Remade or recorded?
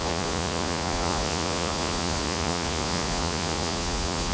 remade